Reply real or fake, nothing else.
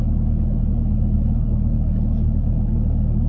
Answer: real